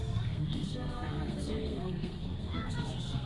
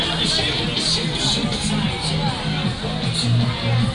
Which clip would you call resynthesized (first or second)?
first